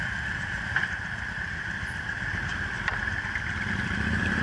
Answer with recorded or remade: remade